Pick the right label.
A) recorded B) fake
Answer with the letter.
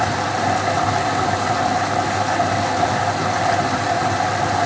A